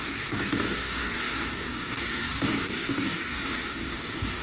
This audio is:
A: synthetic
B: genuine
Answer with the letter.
A